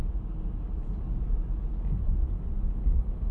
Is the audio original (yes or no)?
yes